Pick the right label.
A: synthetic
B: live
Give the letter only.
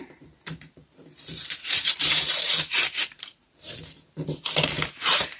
A